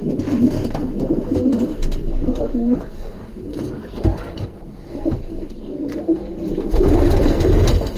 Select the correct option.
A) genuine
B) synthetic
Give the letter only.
B